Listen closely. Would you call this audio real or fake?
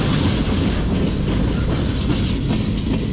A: real